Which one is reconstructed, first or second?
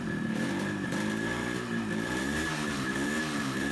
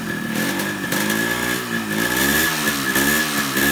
first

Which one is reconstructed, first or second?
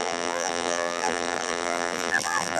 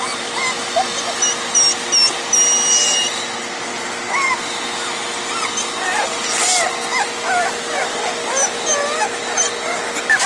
first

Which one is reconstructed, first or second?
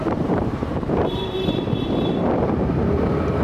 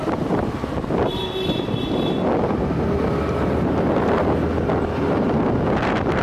first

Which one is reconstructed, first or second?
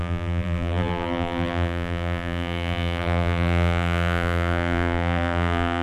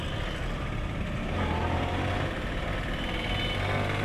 first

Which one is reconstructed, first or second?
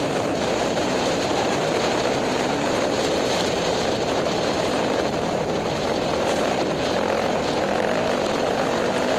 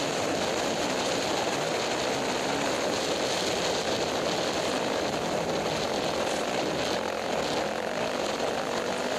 first